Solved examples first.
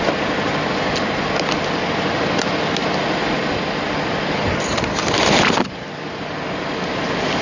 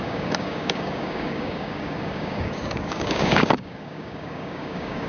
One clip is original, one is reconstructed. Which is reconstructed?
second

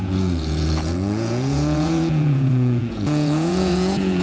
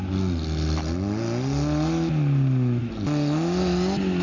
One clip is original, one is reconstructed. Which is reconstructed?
first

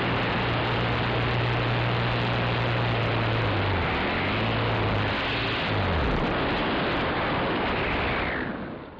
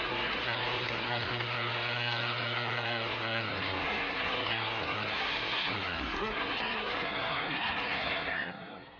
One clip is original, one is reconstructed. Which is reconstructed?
second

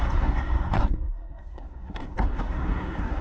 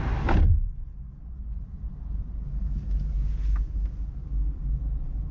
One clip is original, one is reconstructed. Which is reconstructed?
first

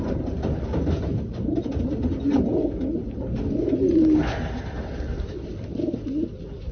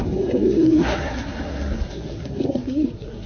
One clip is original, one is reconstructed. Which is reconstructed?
second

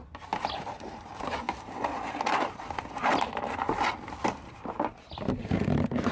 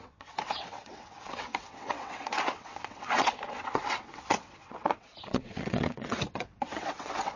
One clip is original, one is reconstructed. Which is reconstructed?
second